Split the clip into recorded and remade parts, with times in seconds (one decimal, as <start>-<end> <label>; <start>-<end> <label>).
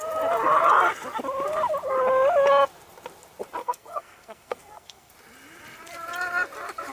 0.0-3.6 recorded; 3.6-5.1 remade; 5.1-6.9 recorded